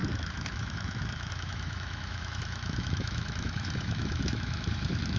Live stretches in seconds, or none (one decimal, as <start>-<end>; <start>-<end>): none